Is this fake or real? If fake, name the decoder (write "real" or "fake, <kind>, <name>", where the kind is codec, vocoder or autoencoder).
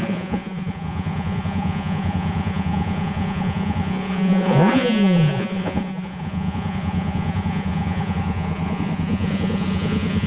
fake, vocoder, Vocos